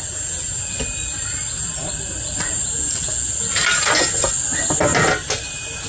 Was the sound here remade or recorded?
recorded